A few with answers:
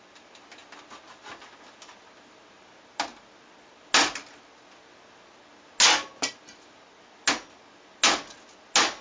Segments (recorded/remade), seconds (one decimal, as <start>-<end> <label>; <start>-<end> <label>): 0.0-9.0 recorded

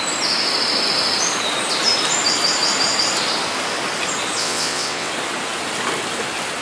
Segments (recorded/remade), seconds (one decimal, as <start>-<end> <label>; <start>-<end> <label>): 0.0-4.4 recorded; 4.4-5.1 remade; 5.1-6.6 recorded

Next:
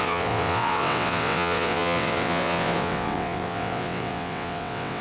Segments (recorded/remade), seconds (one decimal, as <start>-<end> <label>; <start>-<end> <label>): 0.0-5.0 remade

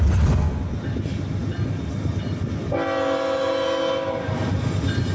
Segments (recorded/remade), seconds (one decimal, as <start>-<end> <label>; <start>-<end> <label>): 0.0-5.1 recorded

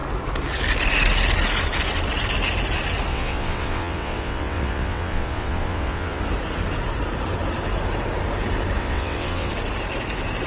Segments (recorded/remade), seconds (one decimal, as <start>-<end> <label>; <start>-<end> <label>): 0.0-3.1 recorded; 3.1-6.2 remade; 6.2-8.8 recorded; 8.8-9.5 remade; 9.5-10.5 recorded